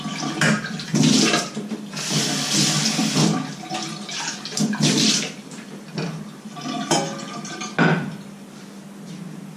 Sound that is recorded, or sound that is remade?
recorded